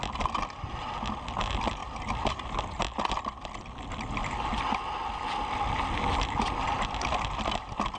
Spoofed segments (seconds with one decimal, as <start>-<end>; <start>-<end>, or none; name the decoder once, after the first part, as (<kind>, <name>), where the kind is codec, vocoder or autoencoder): none